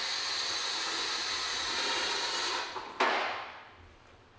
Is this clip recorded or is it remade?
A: recorded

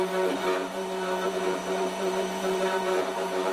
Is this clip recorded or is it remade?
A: remade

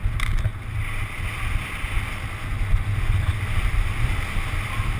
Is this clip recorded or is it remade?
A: recorded